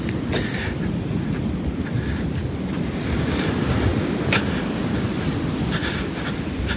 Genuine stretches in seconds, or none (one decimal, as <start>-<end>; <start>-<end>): 0.0-6.8